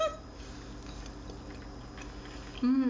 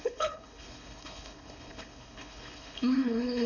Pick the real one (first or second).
first